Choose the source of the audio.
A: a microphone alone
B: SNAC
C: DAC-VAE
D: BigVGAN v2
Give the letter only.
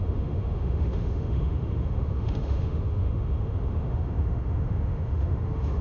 C